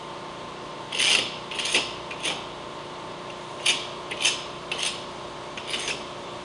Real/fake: real